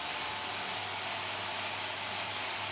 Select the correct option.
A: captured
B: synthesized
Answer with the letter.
A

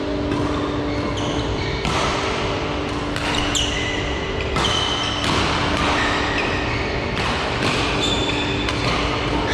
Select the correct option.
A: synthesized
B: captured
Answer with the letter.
B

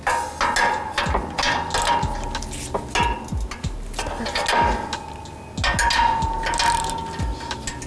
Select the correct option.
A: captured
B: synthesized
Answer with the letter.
A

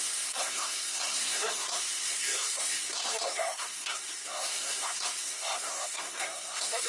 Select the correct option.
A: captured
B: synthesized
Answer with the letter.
B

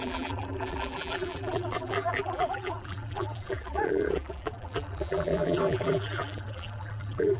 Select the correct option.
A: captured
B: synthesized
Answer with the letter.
B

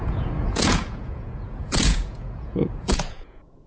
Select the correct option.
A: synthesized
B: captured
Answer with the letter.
A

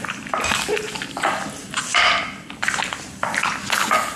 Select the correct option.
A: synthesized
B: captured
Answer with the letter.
B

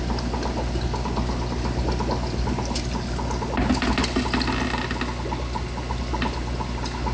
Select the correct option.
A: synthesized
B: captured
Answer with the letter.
B